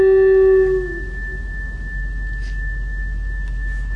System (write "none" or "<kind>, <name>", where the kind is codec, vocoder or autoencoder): none